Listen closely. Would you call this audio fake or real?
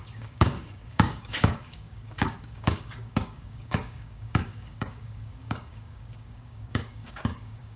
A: fake